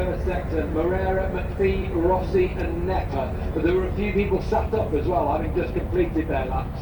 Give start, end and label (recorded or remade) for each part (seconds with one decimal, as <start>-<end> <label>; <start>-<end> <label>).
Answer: 0.0-6.8 recorded